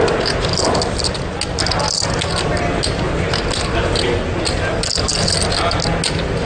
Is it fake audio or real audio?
real